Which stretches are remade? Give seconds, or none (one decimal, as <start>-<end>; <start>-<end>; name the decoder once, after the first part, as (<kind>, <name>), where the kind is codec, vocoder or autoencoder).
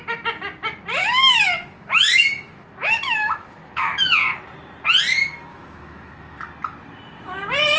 1.0-4.1 (autoencoder, DAC-VAE); 5.5-6.4